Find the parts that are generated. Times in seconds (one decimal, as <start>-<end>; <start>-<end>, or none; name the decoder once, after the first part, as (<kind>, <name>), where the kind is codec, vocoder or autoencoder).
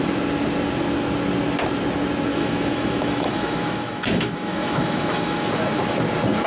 2.3-5.5 (autoencoder, DAC-VAE)